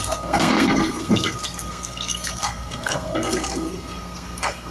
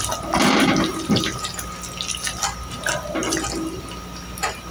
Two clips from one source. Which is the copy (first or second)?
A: first